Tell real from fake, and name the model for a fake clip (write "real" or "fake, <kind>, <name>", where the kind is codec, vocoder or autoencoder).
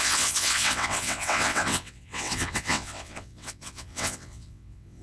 fake, vocoder, WaveNeXt